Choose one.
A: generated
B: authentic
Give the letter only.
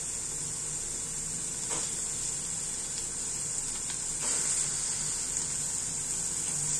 B